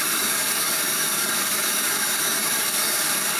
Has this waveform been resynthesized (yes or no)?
yes